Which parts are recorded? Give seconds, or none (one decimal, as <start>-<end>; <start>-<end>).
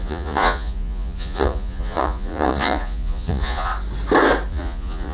3.7-4.5